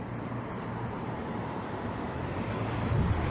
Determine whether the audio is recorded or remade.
remade